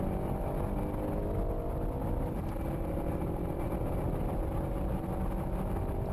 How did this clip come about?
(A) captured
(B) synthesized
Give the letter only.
A